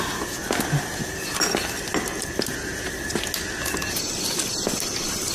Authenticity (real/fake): real